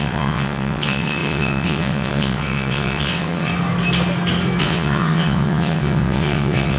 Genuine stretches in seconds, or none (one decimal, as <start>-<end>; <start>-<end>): 3.5-4.6